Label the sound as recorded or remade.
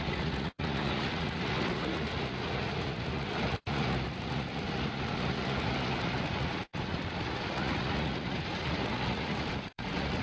remade